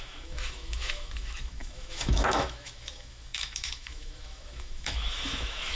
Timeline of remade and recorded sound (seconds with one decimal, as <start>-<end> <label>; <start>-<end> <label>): 0.0-5.8 remade